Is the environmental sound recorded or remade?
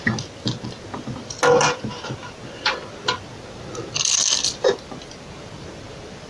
recorded